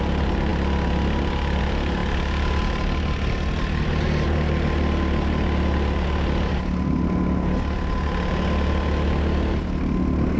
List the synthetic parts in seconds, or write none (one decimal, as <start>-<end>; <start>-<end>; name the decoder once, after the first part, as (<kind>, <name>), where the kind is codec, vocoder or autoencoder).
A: none